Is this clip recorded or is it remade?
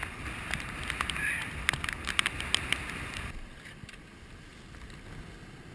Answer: recorded